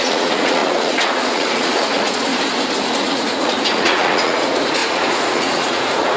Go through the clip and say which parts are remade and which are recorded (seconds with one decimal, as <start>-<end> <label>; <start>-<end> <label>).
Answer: 0.0-2.3 remade; 2.3-3.0 recorded; 3.0-6.2 remade